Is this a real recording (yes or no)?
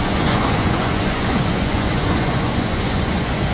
no